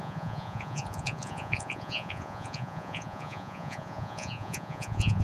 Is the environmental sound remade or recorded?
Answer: remade